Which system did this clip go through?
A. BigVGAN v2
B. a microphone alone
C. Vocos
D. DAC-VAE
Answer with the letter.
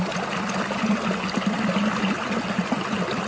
B